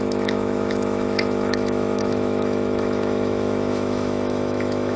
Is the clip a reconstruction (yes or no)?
yes